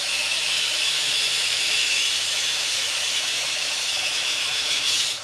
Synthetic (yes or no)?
yes